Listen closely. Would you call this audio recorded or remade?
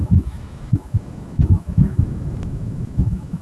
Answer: remade